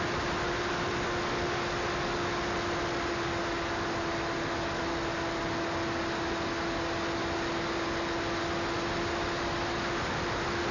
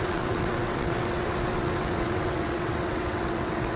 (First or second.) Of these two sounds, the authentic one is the first